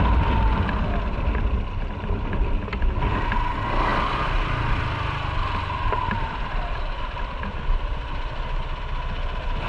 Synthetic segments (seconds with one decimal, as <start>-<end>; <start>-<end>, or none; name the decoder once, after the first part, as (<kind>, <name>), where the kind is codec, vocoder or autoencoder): 3.9-8.8 (vocoder, BigVGAN v2)